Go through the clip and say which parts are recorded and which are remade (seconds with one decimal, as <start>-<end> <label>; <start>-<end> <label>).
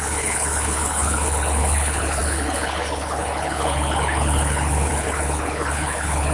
0.0-6.3 remade